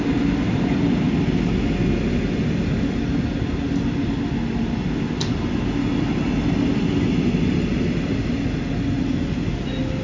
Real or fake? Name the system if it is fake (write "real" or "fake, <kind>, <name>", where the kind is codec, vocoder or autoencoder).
real